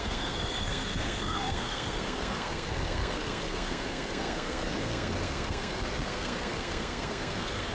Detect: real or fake fake